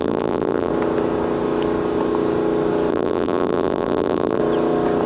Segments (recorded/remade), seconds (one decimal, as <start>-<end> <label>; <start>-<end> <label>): 0.0-0.7 remade; 0.7-2.9 recorded; 2.9-4.4 remade; 4.4-5.1 recorded